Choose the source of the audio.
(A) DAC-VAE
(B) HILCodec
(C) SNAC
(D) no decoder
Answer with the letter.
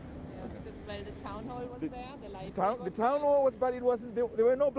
D